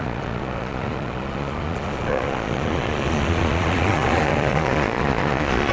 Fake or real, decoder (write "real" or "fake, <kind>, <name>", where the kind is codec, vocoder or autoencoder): fake, vocoder, Vocos